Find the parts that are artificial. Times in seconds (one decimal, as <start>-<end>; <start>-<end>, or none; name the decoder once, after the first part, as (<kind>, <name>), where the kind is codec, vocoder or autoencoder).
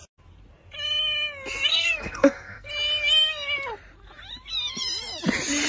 1.7-2.7 (codec, SNAC)